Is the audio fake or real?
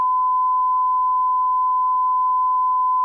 real